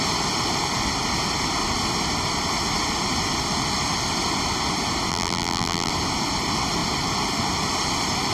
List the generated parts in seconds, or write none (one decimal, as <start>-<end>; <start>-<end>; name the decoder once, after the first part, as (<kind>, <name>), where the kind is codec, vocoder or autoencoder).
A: 5.1-5.9 (vocoder, BigVGAN v2)